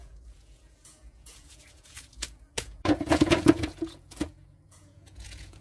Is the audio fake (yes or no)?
yes